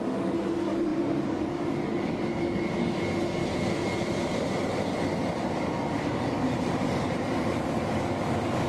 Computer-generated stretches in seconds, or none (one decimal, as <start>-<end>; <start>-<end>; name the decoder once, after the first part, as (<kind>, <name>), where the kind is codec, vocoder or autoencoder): 0.0-3.4 (codec, DAC); 5.4-8.7